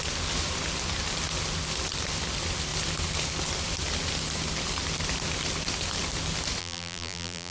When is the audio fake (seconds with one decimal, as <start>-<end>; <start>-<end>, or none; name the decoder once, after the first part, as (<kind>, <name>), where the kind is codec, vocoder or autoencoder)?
6.6-7.5 (vocoder, BigVGAN v2)